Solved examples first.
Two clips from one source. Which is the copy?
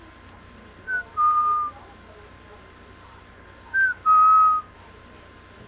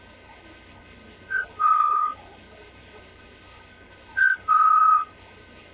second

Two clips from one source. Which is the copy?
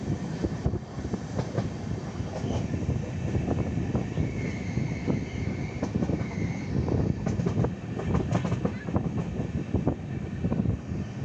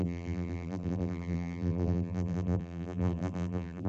second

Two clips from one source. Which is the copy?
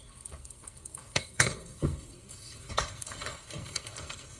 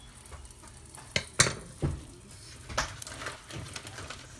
first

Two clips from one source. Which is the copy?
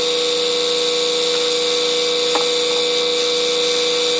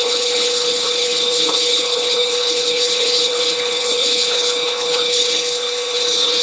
second